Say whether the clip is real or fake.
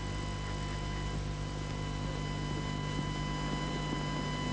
real